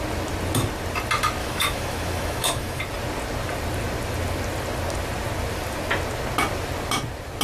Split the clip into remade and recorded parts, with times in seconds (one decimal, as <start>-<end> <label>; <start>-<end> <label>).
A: 0.0-1.4 recorded; 1.4-2.8 remade; 2.8-7.4 recorded